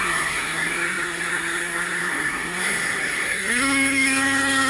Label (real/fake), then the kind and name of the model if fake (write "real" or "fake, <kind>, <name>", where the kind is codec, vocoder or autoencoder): fake, codec, SNAC